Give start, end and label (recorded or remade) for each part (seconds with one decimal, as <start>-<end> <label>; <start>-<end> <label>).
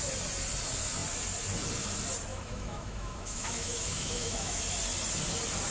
0.0-2.3 recorded; 2.3-4.6 remade; 4.6-5.7 recorded